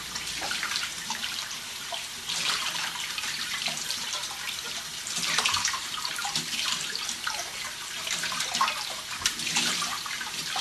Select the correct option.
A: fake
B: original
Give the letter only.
A